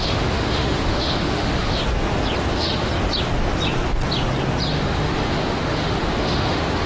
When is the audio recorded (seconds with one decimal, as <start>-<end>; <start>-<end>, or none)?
1.8-2.5; 2.9-4.7